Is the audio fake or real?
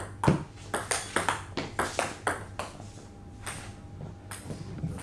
real